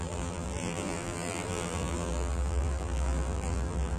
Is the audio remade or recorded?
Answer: remade